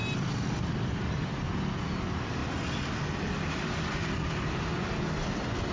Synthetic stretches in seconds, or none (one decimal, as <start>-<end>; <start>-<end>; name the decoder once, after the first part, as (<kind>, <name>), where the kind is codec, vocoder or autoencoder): 0.0-1.1 (vocoder, BigVGAN v2)